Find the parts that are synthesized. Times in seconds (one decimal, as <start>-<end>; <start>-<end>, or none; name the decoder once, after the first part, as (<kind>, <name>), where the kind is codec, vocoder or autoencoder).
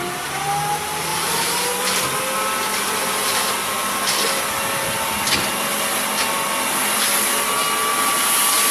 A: 1.1-1.8 (vocoder, BigVGAN v2)